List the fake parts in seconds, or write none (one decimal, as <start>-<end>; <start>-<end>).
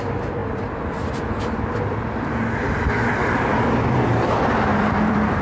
0.0-0.4; 3.6-5.4